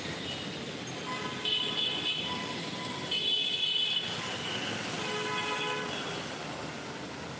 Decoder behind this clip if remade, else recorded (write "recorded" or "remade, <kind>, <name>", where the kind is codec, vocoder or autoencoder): recorded